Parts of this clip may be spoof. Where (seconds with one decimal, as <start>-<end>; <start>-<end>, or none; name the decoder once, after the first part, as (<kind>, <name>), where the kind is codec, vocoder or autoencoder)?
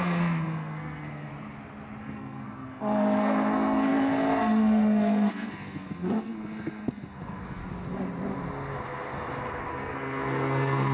0.0-1.3 (codec, SNAC); 2.0-7.6; 9.7-10.9